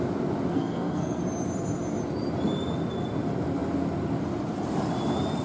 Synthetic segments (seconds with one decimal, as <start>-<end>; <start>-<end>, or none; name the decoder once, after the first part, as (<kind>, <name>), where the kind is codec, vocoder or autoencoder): 0.5-1.2 (codec, SNAC)